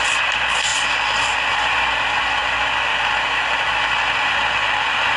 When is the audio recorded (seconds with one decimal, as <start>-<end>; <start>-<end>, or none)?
0.0-5.2